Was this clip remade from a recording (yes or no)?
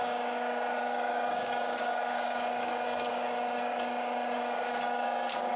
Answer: yes